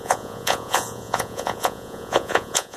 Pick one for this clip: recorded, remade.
remade